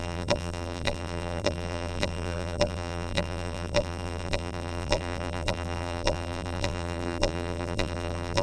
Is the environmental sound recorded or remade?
remade